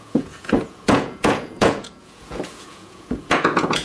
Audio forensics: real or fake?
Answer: fake